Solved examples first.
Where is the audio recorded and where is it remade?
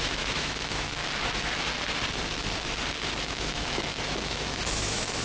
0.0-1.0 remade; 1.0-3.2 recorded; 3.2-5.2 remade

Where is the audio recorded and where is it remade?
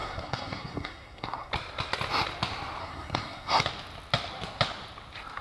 0.0-1.5 remade; 1.5-2.8 recorded; 2.8-3.6 remade; 3.6-5.4 recorded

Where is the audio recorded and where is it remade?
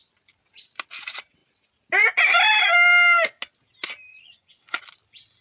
0.0-4.1 recorded; 4.1-4.8 remade; 4.8-5.4 recorded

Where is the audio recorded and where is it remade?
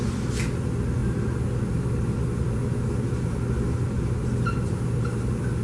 0.0-5.6 recorded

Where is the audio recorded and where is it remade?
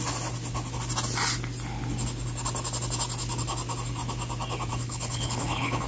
0.0-4.7 recorded; 4.7-5.9 remade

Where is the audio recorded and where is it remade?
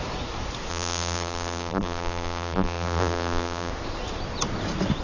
0.0-0.7 recorded; 0.7-3.7 remade; 3.7-5.0 recorded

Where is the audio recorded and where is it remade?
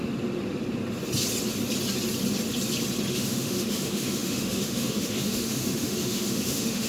0.0-3.1 recorded; 3.1-6.9 remade